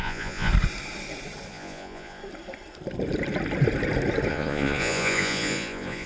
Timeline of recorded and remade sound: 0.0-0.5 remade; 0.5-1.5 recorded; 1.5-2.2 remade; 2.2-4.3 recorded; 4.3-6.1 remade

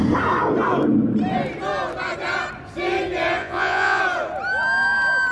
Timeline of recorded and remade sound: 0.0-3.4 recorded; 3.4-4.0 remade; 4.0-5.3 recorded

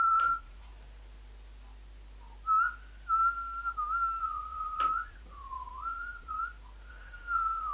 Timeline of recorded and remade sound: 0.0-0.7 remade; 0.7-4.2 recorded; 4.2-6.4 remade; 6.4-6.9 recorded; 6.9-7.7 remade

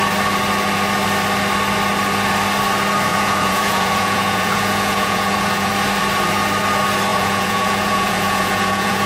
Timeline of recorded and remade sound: 0.0-3.1 recorded; 3.1-5.7 remade; 5.7-7.1 recorded; 7.1-9.1 remade

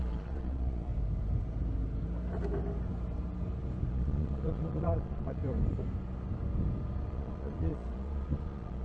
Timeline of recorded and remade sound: 0.0-0.9 remade; 0.9-3.9 recorded; 3.9-5.4 remade; 5.4-7.1 recorded; 7.1-8.8 remade